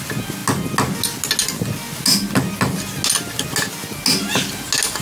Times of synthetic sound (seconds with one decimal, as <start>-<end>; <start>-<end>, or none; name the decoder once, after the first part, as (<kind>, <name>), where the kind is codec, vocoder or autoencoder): none